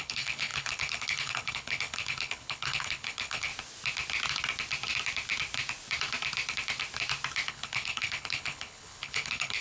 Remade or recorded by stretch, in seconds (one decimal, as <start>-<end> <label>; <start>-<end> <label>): 0.0-3.5 remade; 3.5-7.5 recorded; 7.5-9.6 remade

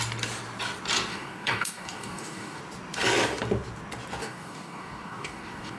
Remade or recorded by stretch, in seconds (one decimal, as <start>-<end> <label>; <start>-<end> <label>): 0.0-1.1 recorded; 1.1-2.6 remade; 2.6-4.2 recorded; 4.2-5.8 remade